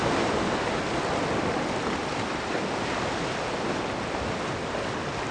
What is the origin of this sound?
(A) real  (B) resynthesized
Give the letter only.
A